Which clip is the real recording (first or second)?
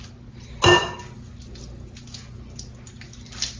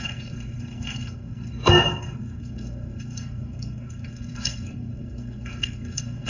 first